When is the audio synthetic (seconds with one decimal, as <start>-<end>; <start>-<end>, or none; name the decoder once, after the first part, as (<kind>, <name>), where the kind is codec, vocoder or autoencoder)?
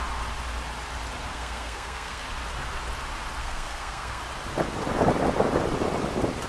1.3-2.2 (codec, SNAC); 3.4-4.2